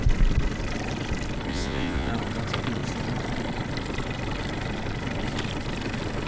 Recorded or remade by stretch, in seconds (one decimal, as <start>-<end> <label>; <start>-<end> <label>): 0.0-1.5 recorded; 1.5-2.1 remade; 2.1-6.3 recorded